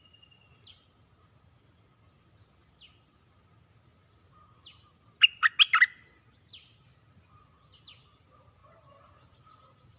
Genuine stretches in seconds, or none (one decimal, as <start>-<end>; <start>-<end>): 0.0-10.0